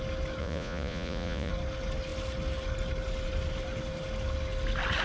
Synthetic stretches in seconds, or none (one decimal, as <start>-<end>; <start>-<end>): 0.4-1.5